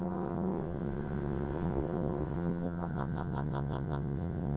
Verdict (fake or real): fake